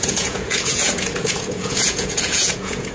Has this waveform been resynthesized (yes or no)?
yes